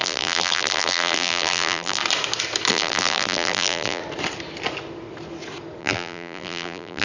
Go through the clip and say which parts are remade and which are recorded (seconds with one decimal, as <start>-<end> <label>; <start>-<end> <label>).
0.0-2.0 remade; 2.0-2.7 recorded; 2.7-4.0 remade; 4.0-5.8 recorded; 5.8-7.0 remade